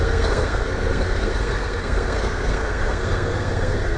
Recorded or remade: remade